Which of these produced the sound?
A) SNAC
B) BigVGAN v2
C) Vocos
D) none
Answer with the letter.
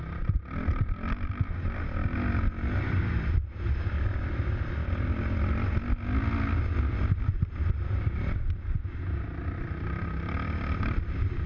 D